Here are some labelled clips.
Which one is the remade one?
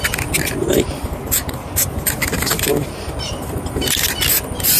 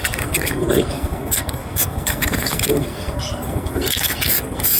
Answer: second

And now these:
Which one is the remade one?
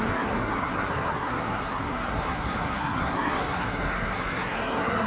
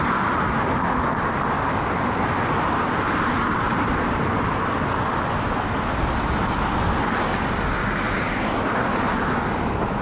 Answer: first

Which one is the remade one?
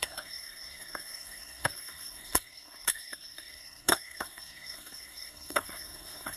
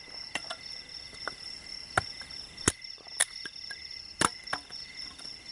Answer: first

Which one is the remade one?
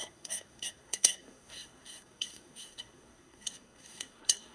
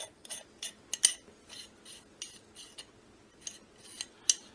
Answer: first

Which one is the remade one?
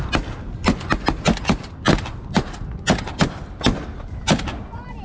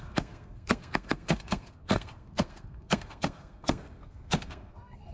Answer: second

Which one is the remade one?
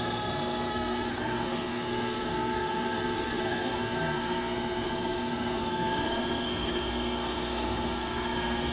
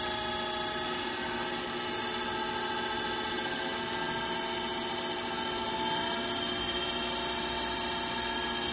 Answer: first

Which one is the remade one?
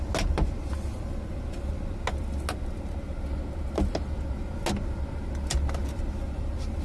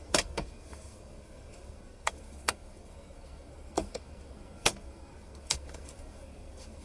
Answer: second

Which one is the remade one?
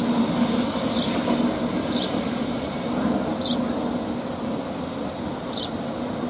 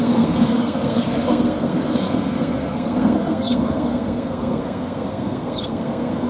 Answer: second